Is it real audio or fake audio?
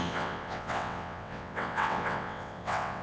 fake